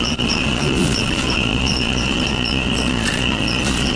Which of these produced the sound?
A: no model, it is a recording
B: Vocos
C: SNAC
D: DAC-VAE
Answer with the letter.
B